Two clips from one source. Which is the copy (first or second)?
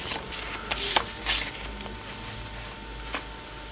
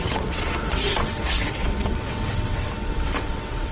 second